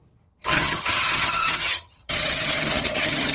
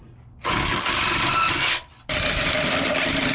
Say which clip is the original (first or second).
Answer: second